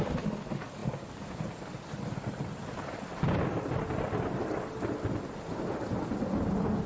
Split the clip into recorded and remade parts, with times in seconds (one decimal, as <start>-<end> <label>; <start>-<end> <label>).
0.0-6.9 recorded